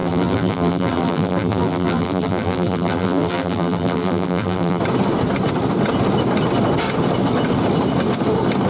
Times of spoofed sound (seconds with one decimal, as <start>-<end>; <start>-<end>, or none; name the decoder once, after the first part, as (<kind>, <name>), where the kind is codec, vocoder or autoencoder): 0.0-4.8 (vocoder, BigVGAN v2)